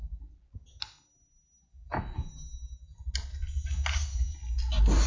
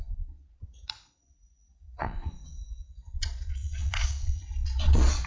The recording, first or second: first